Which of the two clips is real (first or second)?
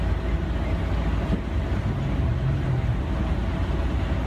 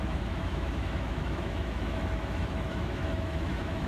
first